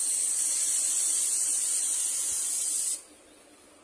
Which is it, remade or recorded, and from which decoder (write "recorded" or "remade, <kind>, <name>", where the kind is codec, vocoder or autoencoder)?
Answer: recorded